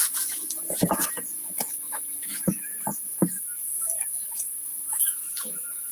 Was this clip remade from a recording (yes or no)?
yes